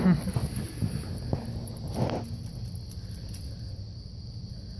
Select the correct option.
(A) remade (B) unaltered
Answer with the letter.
B